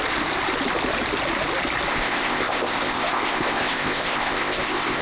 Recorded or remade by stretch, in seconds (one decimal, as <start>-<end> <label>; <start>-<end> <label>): 0.0-1.9 recorded; 1.9-5.0 remade